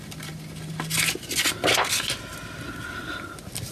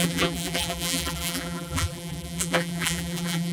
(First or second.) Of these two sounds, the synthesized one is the second